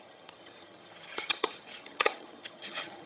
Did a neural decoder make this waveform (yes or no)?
yes